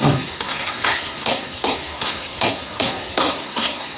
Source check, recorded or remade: remade